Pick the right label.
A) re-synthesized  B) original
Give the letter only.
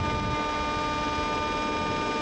B